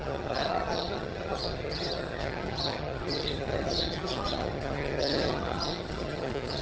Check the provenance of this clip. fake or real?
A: fake